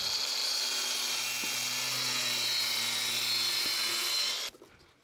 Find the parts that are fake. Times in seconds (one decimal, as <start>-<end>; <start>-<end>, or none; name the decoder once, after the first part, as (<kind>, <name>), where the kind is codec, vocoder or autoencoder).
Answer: none